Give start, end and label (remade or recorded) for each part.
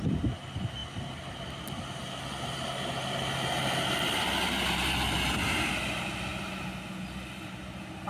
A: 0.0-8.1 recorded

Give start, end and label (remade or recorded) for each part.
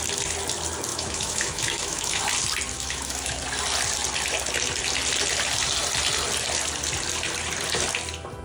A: 0.0-0.9 recorded; 0.9-2.2 remade; 2.2-2.7 recorded; 2.7-3.4 remade; 3.4-8.4 recorded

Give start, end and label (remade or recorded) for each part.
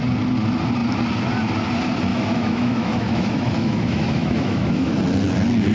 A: 0.0-2.1 recorded; 2.1-4.9 remade; 4.9-5.7 recorded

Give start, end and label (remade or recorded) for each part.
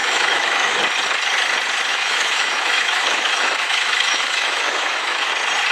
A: 0.0-0.8 remade; 0.8-1.9 recorded; 1.9-5.3 remade; 5.3-5.7 recorded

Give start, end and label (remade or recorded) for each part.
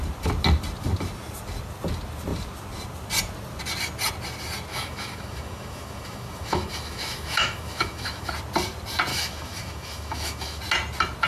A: 0.0-4.7 recorded; 4.7-8.3 remade; 8.3-9.1 recorded; 9.1-10.6 remade; 10.6-11.3 recorded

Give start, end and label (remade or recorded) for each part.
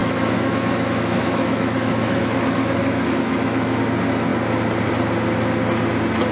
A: 0.0-3.8 remade; 3.8-6.3 recorded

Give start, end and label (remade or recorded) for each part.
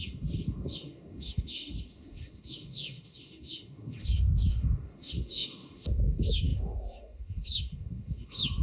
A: 0.0-8.6 remade